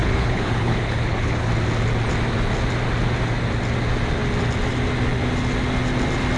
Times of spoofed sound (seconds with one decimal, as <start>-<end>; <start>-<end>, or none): 0.0-1.5